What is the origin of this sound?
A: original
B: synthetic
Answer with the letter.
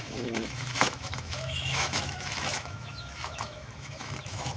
B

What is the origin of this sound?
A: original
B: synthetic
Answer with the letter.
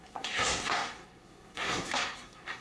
B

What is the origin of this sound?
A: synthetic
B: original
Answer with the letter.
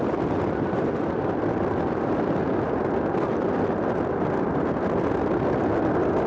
B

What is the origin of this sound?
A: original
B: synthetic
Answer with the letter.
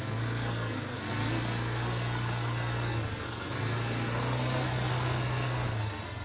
B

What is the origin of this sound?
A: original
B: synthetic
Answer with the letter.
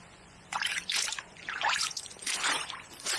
B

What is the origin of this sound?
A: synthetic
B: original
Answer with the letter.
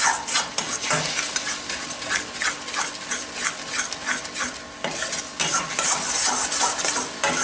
B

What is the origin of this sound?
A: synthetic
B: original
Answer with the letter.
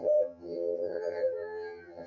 A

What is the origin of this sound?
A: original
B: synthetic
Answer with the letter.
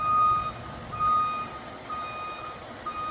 A